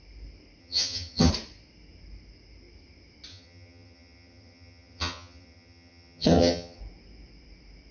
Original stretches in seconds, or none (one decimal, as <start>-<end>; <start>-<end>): 0.0-0.6; 1.3-3.3; 6.8-7.9